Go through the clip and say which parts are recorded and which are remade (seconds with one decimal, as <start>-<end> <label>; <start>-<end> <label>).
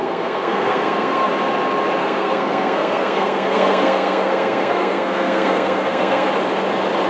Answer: 0.0-1.3 remade; 1.3-2.0 recorded; 2.0-6.3 remade; 6.3-7.1 recorded